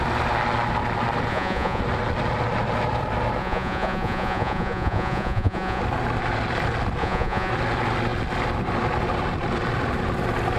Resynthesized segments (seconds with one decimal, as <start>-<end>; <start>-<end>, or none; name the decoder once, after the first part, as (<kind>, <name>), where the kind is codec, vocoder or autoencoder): 1.3-1.8 (vocoder, Vocos); 3.4-5.8; 7.0-7.5